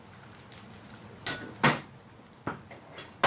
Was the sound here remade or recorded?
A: recorded